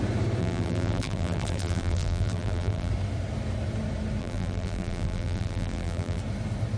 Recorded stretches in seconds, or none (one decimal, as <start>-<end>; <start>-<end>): 0.0-0.4; 2.9-4.2; 6.2-6.8